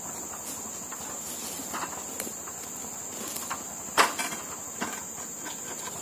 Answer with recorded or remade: recorded